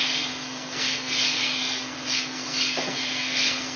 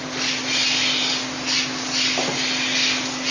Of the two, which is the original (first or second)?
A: second